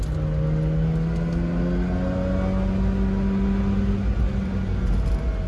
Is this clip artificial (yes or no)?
no